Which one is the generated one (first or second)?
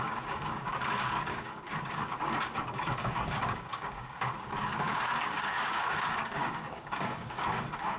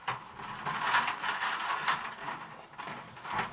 first